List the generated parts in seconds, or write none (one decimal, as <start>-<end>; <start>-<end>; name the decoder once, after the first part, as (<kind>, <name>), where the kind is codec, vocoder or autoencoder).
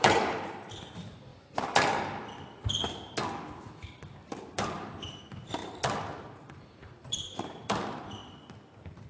0.0-1.3 (vocoder, BigVGAN v2); 4.5-5.6; 6.2-8.2